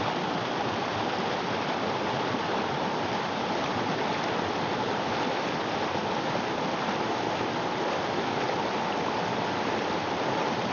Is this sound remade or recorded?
recorded